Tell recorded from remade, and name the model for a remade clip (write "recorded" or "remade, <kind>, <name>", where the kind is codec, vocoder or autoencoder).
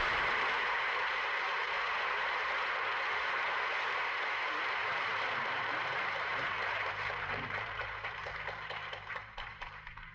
remade, vocoder, BigVGAN v2